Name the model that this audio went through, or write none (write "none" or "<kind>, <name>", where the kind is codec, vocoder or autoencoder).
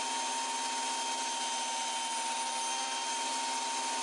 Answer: none